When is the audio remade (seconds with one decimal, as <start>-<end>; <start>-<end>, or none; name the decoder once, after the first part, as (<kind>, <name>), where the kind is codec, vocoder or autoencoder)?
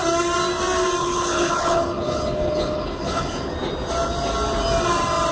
1.0-3.5 (codec, HILCodec)